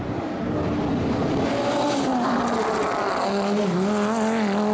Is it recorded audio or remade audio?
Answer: recorded